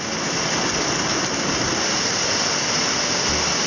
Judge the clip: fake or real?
real